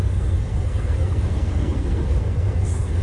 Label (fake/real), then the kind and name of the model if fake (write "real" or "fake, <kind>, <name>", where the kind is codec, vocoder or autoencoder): fake, codec, SNAC